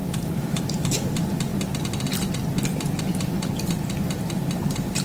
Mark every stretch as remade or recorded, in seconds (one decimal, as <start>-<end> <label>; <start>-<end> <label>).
0.0-1.5 remade; 1.5-3.9 recorded; 3.9-5.0 remade